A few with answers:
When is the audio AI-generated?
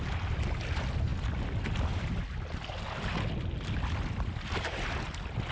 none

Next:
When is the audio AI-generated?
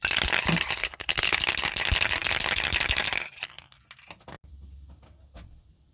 0.8-1.4 (codec, HILCodec)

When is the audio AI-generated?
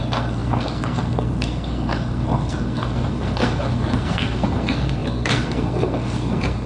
0.0-6.7 (codec, SNAC)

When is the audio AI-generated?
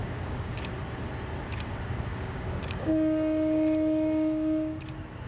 0.0-0.6 (codec, DAC); 2.1-4.8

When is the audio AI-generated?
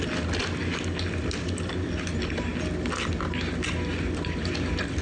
0.0-0.6 (vocoder, BigVGAN v2); 1.2-2.5; 3.9-5.0